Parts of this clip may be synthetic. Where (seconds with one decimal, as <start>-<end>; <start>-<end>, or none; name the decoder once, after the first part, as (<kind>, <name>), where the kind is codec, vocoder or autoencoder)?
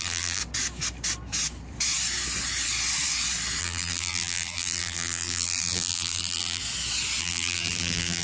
0.0-0.4 (vocoder, BigVGAN v2); 3.6-6.6; 7.2-8.2